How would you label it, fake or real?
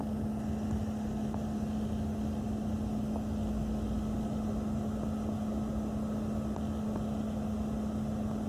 real